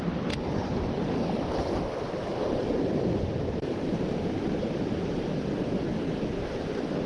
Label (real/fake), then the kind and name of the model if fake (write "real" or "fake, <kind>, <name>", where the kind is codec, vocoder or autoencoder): real